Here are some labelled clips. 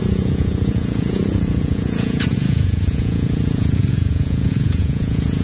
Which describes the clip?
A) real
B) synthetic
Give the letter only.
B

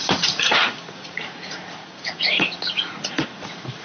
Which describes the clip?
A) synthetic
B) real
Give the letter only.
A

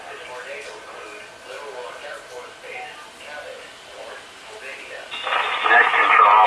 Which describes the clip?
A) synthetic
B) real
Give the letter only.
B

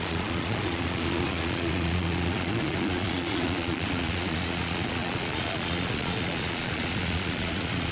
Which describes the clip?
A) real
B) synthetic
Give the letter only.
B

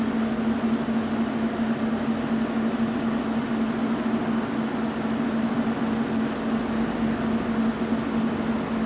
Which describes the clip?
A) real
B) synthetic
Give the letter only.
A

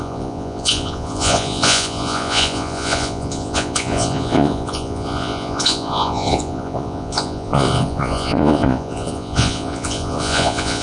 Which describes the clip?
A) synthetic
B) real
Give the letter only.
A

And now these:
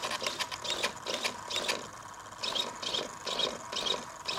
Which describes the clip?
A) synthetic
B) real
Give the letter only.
B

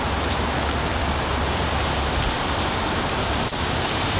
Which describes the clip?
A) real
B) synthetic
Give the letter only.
A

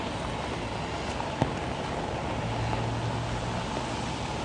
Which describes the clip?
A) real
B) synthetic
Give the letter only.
A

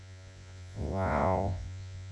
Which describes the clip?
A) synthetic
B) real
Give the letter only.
A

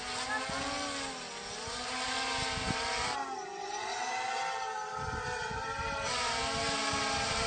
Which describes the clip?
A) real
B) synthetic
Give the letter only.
A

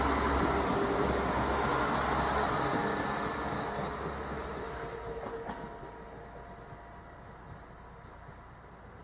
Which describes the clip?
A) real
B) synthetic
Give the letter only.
A